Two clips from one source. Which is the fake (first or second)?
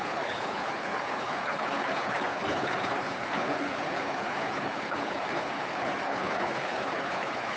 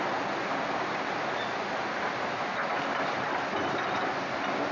first